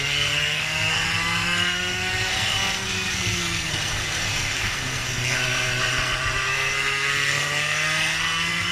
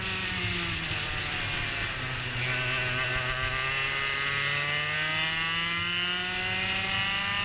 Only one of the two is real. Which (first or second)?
second